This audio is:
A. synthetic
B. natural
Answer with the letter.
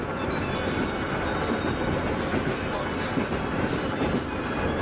B